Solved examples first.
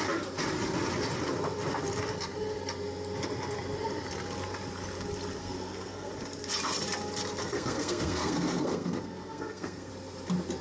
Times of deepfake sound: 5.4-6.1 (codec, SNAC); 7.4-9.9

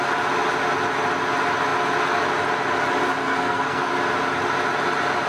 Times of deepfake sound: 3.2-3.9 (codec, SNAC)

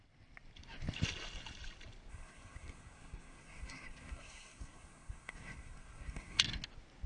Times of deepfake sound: 2.1-6.4 (codec, SNAC)